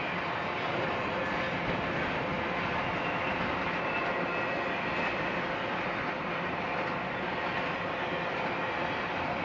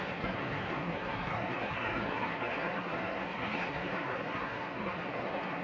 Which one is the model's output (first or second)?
second